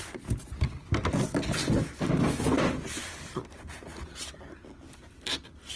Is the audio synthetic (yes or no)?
no